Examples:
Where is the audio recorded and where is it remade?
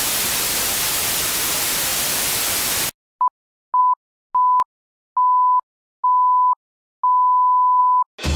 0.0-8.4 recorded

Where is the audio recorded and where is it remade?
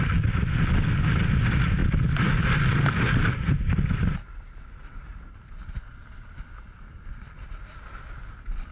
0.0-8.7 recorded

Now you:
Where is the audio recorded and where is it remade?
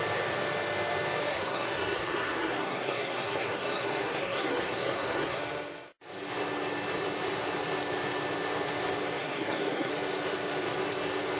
0.0-1.3 recorded; 1.3-5.4 remade; 5.4-9.2 recorded; 9.2-9.9 remade; 9.9-11.4 recorded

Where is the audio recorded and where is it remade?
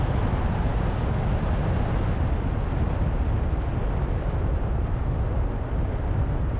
0.0-6.6 recorded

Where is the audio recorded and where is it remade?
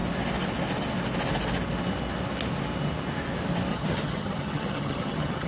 0.0-3.7 recorded; 3.7-5.5 remade